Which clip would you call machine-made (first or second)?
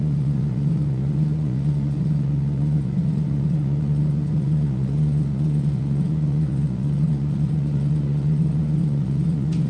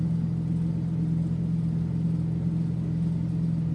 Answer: first